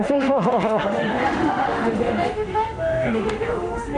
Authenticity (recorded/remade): remade